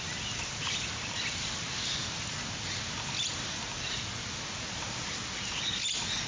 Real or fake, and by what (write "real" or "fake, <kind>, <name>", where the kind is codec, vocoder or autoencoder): real